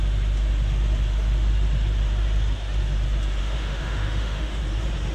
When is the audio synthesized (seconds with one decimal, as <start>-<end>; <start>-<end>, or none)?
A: 3.4-4.6